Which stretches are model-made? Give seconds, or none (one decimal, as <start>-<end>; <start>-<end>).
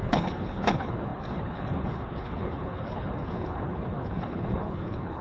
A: 0.0-5.2